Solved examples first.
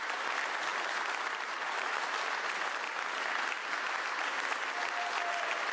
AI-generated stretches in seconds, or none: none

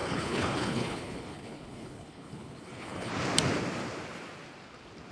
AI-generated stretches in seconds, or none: 0.0-3.1 (codec, HILCodec)